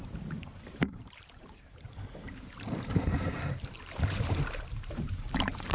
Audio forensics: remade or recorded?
remade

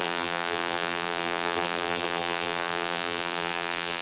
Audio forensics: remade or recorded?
remade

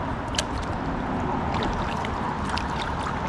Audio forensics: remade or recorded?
recorded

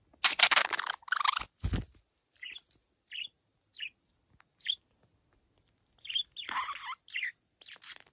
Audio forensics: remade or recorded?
recorded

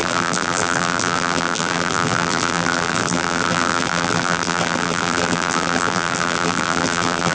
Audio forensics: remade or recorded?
remade